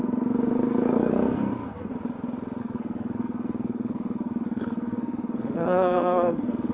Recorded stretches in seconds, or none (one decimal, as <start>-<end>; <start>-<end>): 1.9-2.6